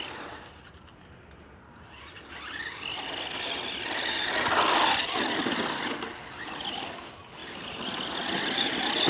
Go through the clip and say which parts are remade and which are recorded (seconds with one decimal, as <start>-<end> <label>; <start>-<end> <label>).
0.0-9.1 recorded